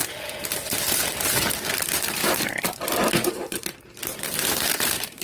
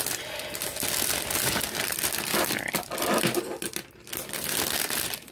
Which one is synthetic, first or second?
first